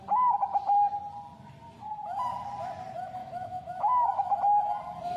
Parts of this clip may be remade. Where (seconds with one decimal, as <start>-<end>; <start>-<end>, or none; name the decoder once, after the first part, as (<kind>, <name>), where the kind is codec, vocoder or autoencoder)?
3.2-4.4 (autoencoder, DAC-VAE)